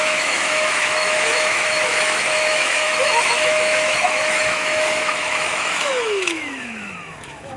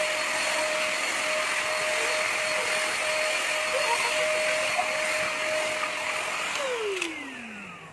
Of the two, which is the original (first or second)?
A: second